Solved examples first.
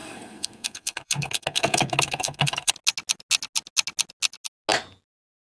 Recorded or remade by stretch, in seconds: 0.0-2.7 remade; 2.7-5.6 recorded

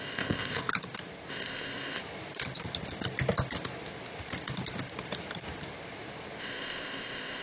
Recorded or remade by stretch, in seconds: 0.0-0.6 remade; 0.6-1.3 recorded; 1.3-2.0 remade; 2.0-6.4 recorded; 6.4-7.4 remade

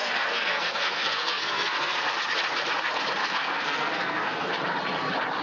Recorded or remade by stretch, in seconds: 0.0-2.0 remade; 2.0-3.2 recorded; 3.2-4.5 remade; 4.5-5.4 recorded